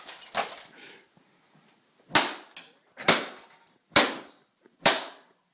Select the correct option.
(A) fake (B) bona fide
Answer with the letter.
B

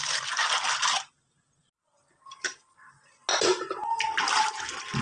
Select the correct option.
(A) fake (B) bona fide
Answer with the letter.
B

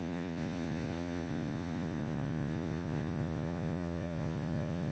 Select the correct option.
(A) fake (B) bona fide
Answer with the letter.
A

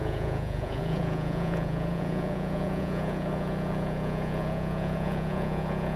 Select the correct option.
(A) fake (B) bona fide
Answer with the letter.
A